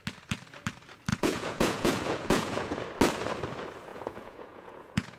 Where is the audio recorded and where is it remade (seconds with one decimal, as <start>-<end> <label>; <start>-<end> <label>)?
0.0-1.1 recorded; 1.1-2.8 remade; 2.8-3.9 recorded; 3.9-5.2 remade